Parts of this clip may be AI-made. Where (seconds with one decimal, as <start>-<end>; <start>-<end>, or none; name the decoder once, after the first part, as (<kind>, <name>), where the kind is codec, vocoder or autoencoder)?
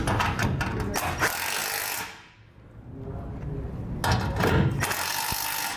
none